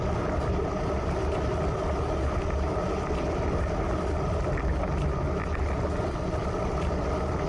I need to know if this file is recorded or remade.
recorded